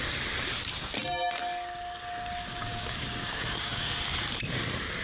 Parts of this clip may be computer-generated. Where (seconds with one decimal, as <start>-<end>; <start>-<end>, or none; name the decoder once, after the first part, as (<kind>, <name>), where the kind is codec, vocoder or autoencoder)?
2.7-3.9 (codec, DAC)